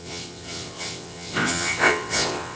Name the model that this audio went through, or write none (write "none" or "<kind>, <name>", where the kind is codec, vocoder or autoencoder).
vocoder, WaveNeXt